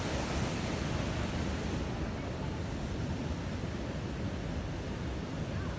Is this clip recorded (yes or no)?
yes